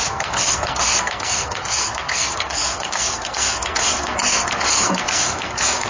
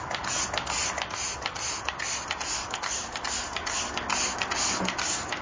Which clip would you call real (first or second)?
second